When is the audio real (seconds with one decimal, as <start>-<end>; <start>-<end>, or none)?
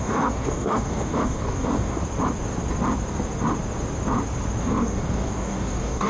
2.0-4.6